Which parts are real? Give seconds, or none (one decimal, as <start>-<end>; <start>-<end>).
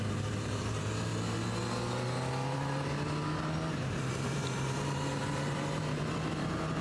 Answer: 1.1-4.1; 5.2-5.7